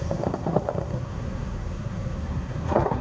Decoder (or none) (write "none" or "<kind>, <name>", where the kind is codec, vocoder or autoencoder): codec, SNAC